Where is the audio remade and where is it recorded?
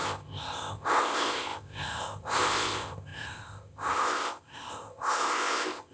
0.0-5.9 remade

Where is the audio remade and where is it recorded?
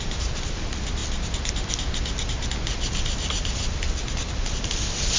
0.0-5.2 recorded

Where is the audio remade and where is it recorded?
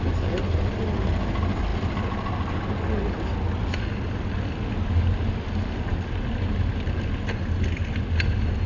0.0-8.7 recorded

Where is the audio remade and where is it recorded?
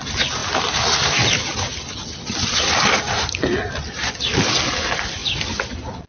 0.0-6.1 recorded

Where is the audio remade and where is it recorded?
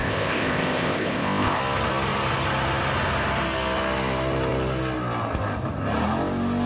0.0-1.6 remade; 1.6-6.7 recorded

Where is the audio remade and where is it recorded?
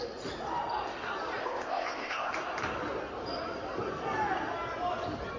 0.0-1.4 recorded; 1.4-2.3 remade; 2.3-5.4 recorded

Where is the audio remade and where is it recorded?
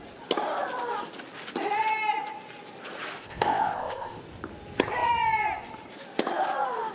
0.0-3.2 recorded; 3.2-4.2 remade; 4.2-6.9 recorded